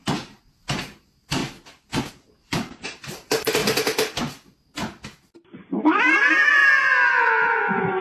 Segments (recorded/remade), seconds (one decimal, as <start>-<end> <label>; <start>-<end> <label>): 0.0-1.4 remade; 1.4-2.1 recorded; 2.1-3.6 remade; 3.6-5.3 recorded; 5.3-8.0 remade